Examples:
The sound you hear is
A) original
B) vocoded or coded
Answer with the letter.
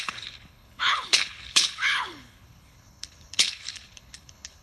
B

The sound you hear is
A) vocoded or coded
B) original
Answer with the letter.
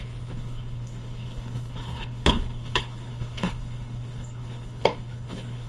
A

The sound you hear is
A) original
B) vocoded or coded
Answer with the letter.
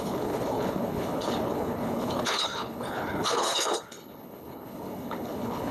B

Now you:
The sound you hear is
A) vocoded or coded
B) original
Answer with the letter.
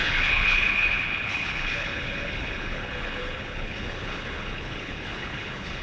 A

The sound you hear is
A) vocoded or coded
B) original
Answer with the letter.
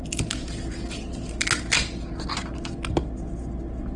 B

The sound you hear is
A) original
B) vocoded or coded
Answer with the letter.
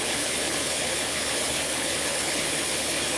B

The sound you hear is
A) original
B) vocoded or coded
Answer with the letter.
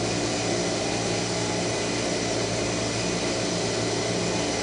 A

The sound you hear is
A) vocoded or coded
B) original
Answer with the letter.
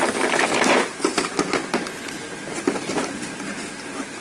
B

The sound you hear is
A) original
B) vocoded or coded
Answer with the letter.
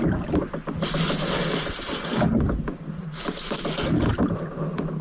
A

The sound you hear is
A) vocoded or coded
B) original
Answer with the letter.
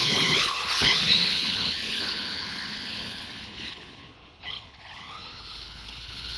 A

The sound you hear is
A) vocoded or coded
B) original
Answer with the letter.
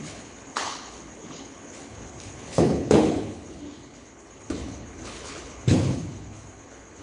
A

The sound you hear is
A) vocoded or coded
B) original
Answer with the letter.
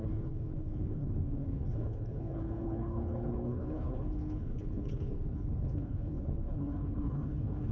A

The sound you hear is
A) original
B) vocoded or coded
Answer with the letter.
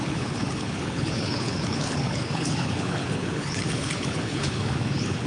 B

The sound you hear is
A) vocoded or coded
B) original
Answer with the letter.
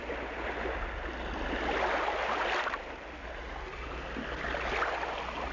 B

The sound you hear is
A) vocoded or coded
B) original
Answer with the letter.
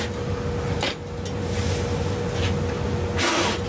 B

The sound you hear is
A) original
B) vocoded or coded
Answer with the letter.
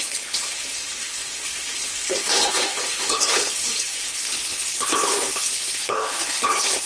B